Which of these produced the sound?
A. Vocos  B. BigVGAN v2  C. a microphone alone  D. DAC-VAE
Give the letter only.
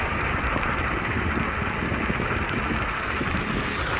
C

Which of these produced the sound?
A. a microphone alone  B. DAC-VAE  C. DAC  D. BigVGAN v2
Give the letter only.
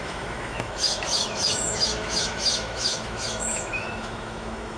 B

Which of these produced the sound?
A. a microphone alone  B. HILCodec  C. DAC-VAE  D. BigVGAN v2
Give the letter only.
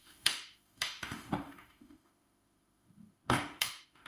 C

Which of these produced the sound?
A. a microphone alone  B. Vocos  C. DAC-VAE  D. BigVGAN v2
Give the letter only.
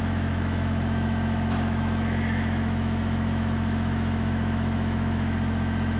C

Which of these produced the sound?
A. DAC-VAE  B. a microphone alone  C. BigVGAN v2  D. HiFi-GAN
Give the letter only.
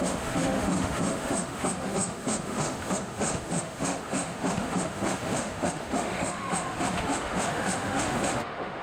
A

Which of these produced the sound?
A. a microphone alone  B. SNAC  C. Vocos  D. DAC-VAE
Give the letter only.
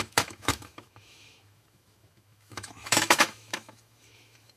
D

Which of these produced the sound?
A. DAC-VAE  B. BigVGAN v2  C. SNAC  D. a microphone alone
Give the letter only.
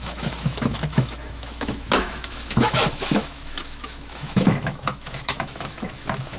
A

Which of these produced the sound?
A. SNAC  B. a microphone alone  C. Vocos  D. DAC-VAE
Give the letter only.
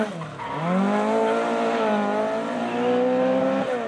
B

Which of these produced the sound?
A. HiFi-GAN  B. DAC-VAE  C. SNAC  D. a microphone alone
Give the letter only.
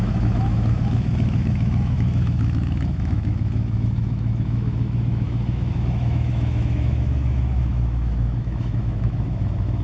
B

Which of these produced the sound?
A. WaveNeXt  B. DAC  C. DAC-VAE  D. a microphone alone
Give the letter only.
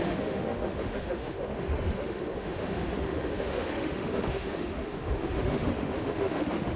C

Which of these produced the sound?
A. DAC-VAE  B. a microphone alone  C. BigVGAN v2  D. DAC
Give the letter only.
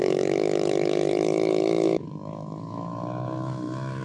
A